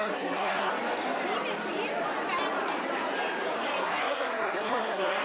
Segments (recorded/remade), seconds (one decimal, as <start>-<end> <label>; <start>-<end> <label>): 0.0-0.7 remade; 0.7-3.8 recorded; 3.8-5.2 remade